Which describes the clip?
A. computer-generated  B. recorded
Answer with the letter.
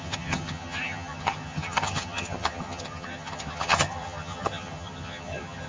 A